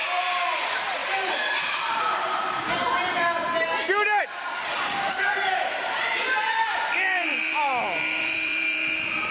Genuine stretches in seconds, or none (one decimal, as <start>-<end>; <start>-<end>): 1.0-1.5; 3.0-4.2